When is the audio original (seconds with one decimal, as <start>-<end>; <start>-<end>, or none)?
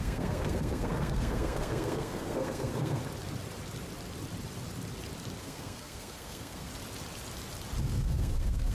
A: 3.0-5.4; 6.7-7.8